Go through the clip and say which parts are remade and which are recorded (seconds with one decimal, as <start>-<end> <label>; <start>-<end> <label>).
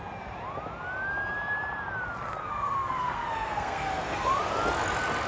0.0-2.4 recorded; 2.4-4.4 remade; 4.4-5.3 recorded